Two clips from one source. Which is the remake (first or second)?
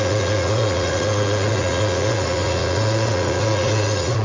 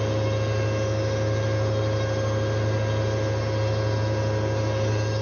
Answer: first